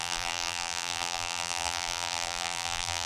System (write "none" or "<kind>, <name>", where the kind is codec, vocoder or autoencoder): vocoder, BigVGAN v2